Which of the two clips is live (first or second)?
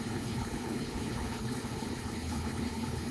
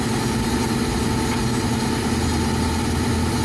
second